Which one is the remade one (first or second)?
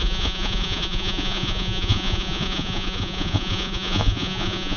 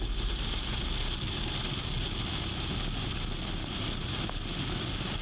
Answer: first